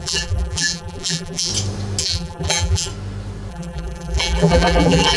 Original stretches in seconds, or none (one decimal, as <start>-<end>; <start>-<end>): 1.5-2.0; 2.9-3.5

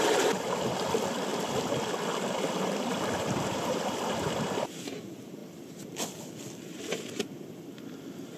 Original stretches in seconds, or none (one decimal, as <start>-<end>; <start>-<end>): 0.0-1.3; 3.9-5.4; 6.8-8.4

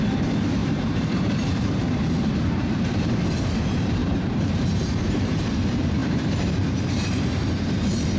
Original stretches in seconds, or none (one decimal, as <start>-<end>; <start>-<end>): 0.0-0.6; 3.4-4.0; 5.5-6.0; 7.3-8.2

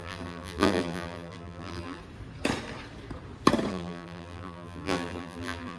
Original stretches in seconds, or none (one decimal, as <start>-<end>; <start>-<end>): 2.0-3.7

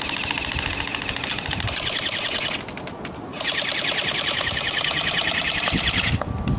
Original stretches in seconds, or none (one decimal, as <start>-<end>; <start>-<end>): 0.0-3.3; 5.6-6.6

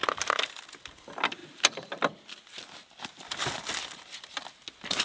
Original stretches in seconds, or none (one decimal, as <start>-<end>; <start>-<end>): 0.8-1.4; 4.4-5.0

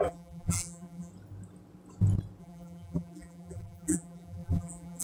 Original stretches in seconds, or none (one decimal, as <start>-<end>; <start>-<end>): 1.1-2.4

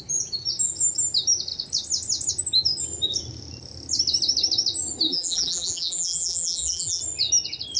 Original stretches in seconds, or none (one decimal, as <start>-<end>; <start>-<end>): 0.0-5.1; 7.0-7.8